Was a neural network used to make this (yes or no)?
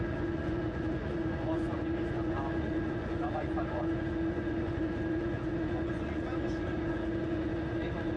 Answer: yes